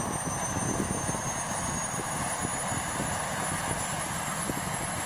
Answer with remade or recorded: recorded